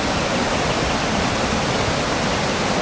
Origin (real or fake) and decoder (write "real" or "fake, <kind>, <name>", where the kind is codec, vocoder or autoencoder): real